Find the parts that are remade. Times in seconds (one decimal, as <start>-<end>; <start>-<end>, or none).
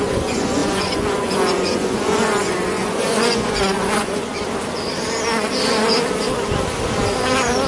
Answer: 0.0-4.3